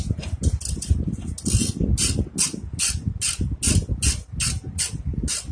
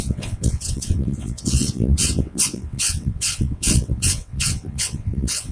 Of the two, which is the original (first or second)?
first